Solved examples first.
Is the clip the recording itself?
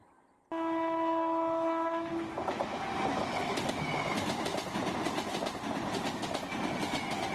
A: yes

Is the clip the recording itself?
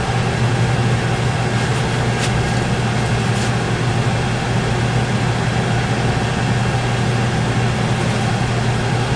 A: yes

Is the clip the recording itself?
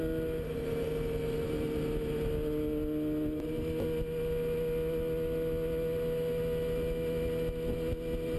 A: yes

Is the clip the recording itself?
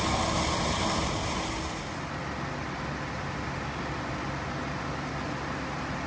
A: yes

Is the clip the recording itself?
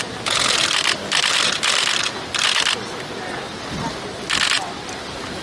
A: no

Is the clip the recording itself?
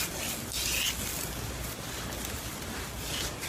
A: yes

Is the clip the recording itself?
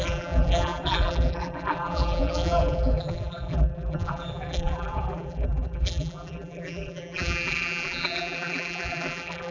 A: no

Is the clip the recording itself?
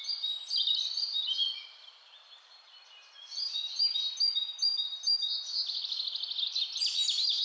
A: yes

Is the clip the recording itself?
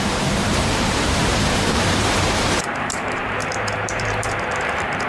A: no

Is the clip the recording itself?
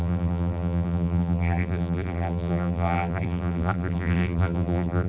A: no